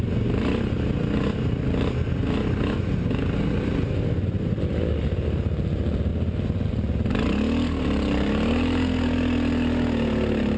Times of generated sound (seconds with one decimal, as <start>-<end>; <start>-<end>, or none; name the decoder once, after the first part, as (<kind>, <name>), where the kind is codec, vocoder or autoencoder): none